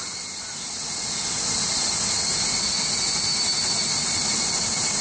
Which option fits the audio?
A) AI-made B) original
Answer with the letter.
B